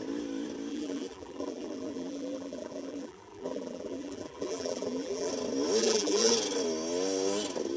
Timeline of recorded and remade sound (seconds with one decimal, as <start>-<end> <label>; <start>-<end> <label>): 0.0-0.7 recorded; 0.7-5.3 remade; 5.3-5.8 recorded; 5.8-6.3 remade; 6.3-7.8 recorded